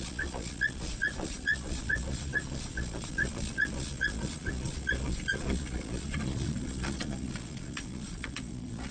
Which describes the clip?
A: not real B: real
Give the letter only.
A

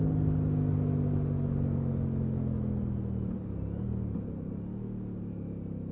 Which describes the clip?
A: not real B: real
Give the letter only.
B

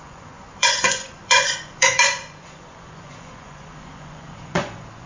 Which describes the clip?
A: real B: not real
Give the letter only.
B